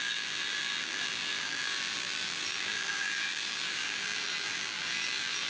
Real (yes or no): no